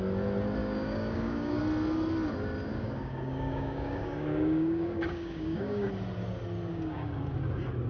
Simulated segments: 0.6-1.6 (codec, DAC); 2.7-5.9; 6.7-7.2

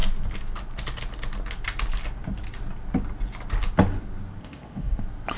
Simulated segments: 4.4-5.0 (codec, ZipCodec)

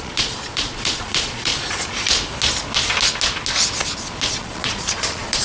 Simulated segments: 0.0-1.5 (vocoder, Vocos); 4.3-5.4

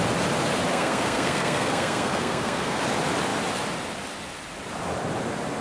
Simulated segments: 0.7-2.8 (codec, SNAC)